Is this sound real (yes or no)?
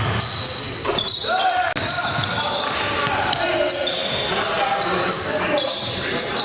yes